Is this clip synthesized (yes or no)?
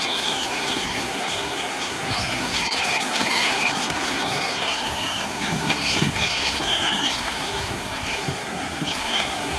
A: yes